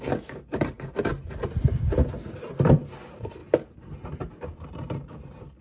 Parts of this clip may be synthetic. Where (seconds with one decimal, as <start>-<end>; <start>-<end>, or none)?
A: 0.0-1.1; 2.7-3.4; 4.4-5.6